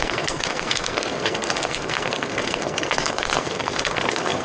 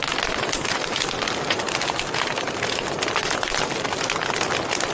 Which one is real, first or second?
second